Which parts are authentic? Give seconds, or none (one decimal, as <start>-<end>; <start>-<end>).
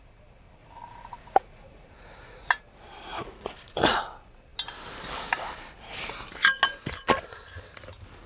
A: 0.0-0.6; 2.5-3.1; 4.0-8.3